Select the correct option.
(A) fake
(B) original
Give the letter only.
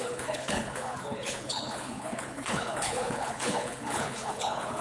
A